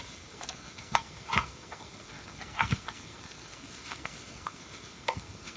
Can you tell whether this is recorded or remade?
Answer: remade